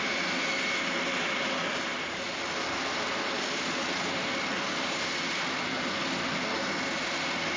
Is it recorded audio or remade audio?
recorded